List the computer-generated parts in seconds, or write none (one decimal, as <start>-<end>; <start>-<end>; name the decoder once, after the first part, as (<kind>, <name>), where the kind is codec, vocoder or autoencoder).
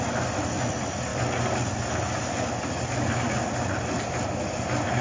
none